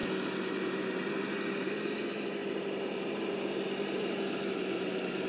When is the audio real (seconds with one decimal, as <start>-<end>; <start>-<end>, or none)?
0.0-0.6